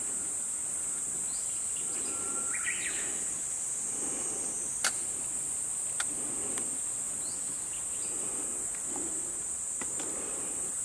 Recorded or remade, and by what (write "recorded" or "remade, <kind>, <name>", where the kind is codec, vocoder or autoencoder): recorded